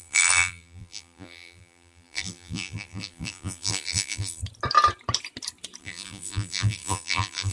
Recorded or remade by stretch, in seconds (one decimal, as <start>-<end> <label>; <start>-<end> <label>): 0.0-4.4 remade; 4.4-5.8 recorded; 5.8-7.5 remade

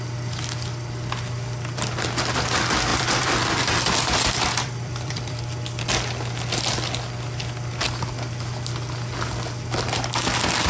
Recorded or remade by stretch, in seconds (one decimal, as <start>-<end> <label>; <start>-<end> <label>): 0.0-2.9 recorded; 2.9-5.4 remade; 5.4-10.7 recorded

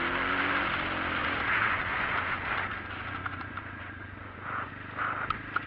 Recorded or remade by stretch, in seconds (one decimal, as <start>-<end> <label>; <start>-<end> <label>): 0.0-1.2 recorded; 1.2-2.7 remade; 2.7-3.2 recorded; 3.2-4.7 remade; 4.7-5.7 recorded

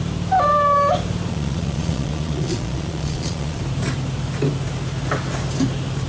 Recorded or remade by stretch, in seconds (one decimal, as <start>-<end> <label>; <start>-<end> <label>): 0.0-1.3 recorded; 1.3-3.6 remade; 3.6-6.1 recorded

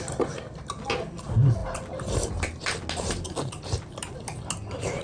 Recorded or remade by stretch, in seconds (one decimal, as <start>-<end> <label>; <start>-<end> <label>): 0.0-5.0 recorded